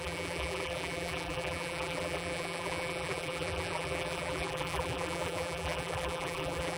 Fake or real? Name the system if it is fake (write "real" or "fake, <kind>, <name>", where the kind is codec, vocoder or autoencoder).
fake, vocoder, BigVGAN v2